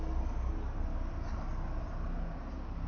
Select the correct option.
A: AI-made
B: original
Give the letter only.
B